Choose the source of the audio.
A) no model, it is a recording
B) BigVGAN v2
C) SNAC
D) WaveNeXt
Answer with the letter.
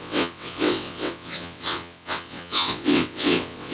D